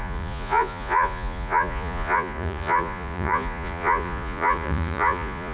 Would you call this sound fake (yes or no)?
yes